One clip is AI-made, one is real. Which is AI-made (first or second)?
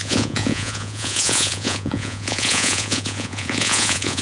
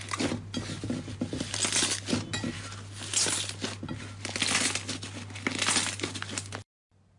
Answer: first